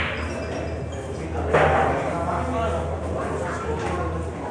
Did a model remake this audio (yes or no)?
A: no